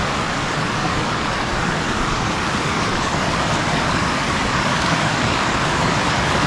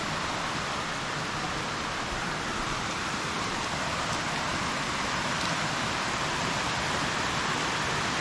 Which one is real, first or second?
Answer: second